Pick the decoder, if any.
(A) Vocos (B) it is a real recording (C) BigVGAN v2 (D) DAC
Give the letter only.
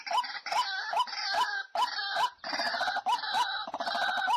B